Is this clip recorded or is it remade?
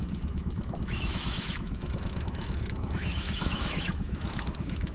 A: remade